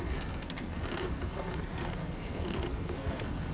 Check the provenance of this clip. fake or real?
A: fake